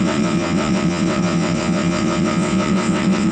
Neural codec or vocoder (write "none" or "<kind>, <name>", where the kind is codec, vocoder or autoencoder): vocoder, WaveNeXt